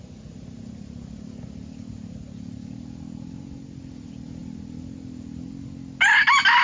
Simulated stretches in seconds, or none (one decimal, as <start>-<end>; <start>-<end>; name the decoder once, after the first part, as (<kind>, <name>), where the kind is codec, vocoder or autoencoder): none